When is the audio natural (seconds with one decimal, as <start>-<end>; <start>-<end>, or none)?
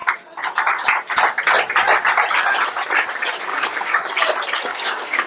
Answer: 0.0-3.5; 4.1-4.7